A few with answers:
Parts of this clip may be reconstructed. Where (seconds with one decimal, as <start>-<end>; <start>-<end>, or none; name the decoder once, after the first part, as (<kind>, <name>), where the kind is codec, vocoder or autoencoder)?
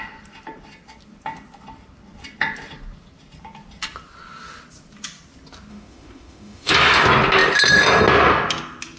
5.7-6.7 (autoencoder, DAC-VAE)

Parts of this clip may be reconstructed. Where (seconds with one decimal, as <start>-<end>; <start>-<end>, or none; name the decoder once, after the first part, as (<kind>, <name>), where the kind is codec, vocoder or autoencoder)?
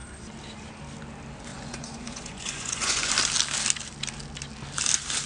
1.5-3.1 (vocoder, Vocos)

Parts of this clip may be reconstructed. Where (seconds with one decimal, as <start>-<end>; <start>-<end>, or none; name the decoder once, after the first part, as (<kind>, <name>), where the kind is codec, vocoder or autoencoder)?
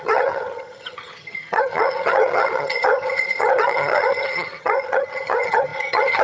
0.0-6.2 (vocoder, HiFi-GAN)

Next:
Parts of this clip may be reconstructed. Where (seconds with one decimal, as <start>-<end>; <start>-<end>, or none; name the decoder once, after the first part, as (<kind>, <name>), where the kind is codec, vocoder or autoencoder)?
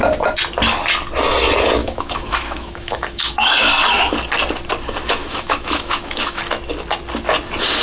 1.8-3.4 (autoencoder, DAC-VAE); 5.2-6.4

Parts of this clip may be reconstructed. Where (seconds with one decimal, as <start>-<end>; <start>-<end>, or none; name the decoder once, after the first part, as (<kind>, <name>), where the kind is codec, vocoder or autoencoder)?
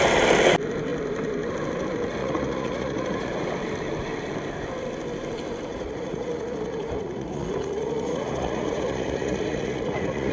2.2-3.4 (vocoder, Vocos); 5.7-10.3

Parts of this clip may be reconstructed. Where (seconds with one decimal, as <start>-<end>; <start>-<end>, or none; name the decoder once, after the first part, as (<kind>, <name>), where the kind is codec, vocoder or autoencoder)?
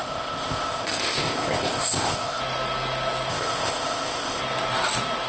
0.0-2.4 (codec, ZipCodec); 3.3-4.4